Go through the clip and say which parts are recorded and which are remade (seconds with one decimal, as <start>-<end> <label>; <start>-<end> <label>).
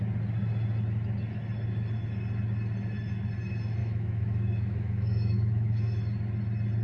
0.0-3.8 recorded; 3.8-6.0 remade; 6.0-6.8 recorded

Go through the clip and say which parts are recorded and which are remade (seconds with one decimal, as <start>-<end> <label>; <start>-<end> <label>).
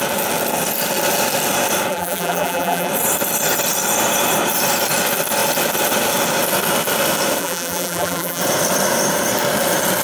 0.0-1.9 recorded; 1.9-2.9 remade; 2.9-7.4 recorded; 7.4-8.4 remade; 8.4-10.0 recorded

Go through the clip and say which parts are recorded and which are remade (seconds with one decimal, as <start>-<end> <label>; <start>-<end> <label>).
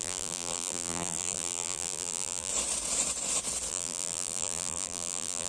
0.0-2.5 remade; 2.5-3.7 recorded; 3.7-5.5 remade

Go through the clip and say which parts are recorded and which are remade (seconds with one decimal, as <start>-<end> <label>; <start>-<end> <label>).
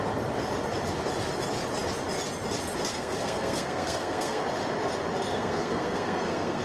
0.0-2.9 recorded; 2.9-4.4 remade; 4.4-5.3 recorded; 5.3-6.6 remade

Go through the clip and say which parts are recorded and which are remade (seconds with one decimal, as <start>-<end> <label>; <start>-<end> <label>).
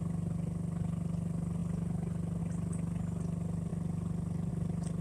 0.0-5.0 recorded